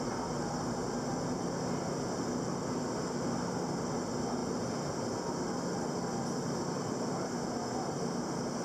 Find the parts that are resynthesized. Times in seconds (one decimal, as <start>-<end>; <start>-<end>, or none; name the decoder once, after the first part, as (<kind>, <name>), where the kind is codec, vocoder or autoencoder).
none